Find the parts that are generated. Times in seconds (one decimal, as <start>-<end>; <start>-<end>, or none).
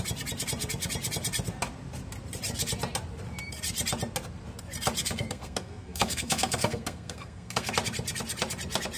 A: 5.0-7.7